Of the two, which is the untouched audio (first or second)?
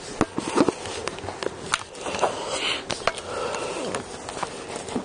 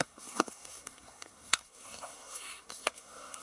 first